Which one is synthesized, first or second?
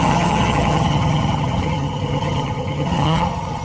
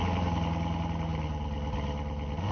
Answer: first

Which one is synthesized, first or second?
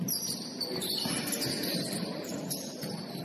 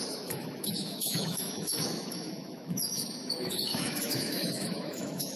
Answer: second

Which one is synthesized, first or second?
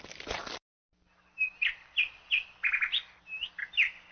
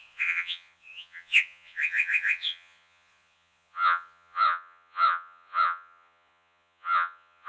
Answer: second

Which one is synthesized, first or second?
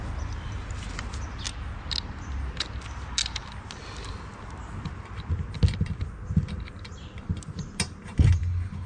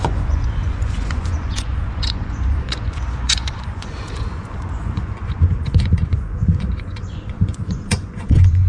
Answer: second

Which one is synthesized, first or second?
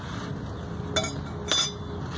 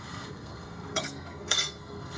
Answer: second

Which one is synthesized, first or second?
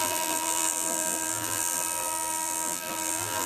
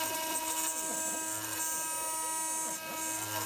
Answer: first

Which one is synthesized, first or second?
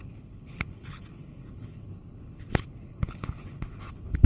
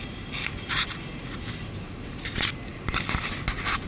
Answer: first